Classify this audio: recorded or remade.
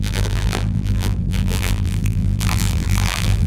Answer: remade